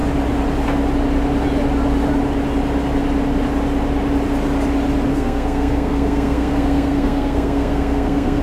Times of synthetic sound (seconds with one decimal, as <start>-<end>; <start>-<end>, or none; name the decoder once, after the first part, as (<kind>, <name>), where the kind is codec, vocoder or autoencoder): 5.1-8.4 (codec, SNAC)